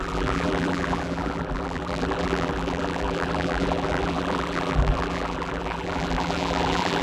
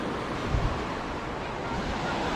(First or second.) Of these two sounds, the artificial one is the first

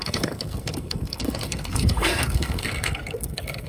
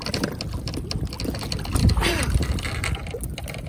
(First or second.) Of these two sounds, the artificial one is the first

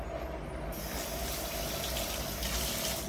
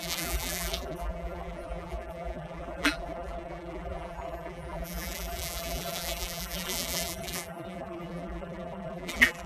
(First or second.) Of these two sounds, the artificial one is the second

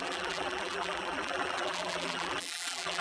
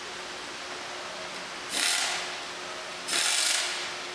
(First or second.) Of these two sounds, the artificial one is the first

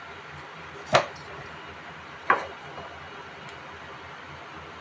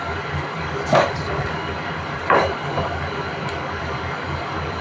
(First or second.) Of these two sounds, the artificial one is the second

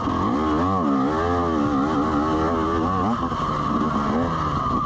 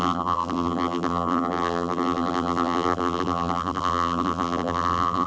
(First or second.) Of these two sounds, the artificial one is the second